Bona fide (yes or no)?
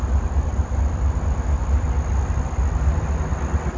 yes